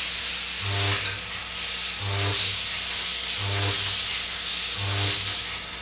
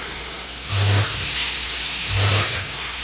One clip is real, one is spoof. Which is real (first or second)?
first